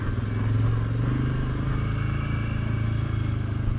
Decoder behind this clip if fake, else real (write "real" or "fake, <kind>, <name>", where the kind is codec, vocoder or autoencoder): real